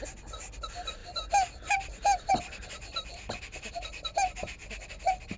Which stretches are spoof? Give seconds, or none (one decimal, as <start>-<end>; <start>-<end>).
none